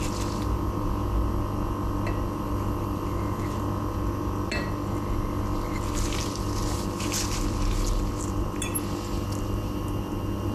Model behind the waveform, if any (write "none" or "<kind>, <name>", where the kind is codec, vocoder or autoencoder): none